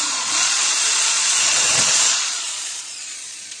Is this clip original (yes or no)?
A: no